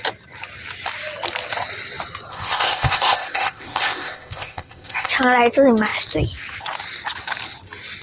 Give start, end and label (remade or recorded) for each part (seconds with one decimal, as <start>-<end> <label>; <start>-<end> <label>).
0.0-2.3 recorded; 2.3-5.1 remade; 5.1-8.0 recorded